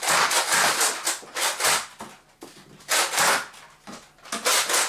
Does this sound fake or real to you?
real